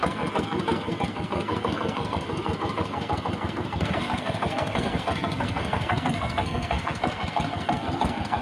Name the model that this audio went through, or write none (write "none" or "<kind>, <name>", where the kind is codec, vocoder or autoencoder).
codec, SNAC